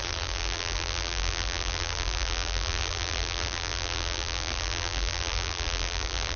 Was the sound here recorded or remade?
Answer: remade